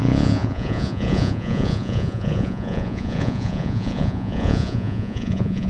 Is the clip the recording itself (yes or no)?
no